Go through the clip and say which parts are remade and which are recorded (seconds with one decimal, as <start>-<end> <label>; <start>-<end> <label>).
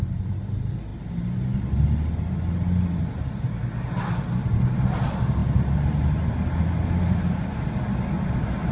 0.0-8.7 recorded